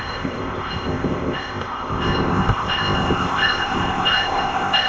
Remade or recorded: remade